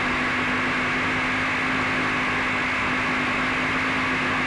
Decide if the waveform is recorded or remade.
recorded